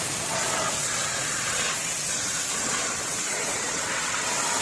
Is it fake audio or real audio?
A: fake